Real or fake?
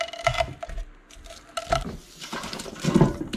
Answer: real